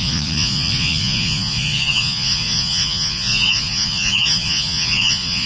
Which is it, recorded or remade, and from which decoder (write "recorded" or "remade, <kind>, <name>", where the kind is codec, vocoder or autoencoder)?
remade, vocoder, Vocos